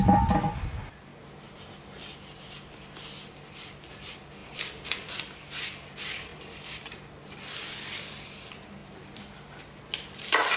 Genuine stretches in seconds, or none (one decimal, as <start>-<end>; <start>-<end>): 0.0-4.4; 5.1-6.3; 7.1-10.6